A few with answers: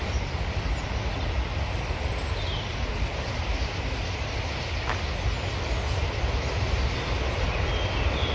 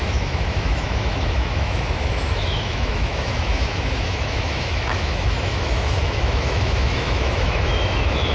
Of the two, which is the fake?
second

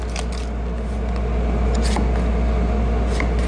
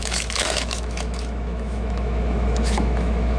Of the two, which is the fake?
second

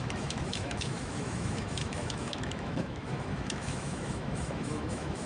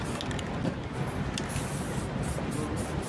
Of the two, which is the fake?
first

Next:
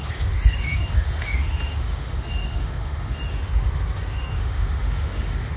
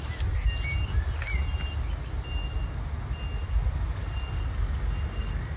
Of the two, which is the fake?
first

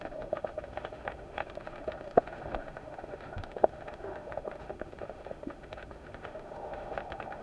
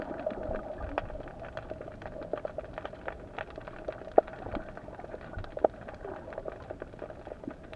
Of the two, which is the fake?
first